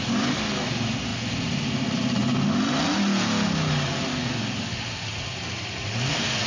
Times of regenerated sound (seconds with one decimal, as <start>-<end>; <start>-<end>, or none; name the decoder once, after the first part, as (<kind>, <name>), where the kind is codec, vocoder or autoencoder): none

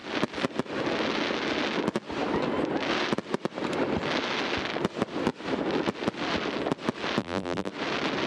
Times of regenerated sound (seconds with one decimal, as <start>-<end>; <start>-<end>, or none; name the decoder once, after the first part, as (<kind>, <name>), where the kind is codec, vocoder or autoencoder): 7.2-7.7 (vocoder, BigVGAN v2)

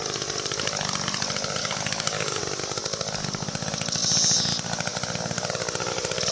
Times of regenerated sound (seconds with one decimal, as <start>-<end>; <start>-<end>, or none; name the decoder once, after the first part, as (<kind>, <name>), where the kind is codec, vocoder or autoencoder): 1.6-2.4 (codec, DAC)

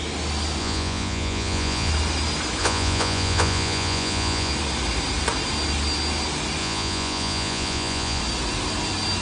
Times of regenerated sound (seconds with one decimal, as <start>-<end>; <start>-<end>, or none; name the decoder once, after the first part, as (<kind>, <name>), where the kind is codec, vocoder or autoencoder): 0.6-1.9 (vocoder, Vocos); 2.6-4.5; 6.6-8.2

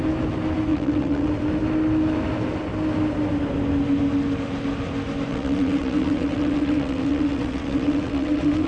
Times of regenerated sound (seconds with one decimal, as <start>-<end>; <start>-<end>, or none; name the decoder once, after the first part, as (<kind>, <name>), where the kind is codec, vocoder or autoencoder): 0.7-1.3 (vocoder, WaveNeXt); 5.3-8.7

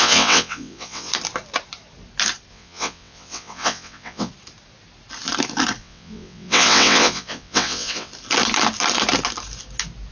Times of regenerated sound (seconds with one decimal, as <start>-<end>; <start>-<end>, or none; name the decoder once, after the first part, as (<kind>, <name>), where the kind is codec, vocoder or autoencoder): 0.0-1.1 (vocoder, WaveNeXt); 2.5-4.3; 5.8-8.1